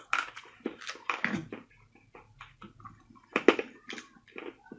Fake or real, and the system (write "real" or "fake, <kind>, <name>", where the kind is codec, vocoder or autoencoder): real